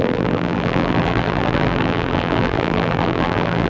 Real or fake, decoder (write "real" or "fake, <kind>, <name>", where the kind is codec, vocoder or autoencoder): fake, vocoder, BigVGAN v2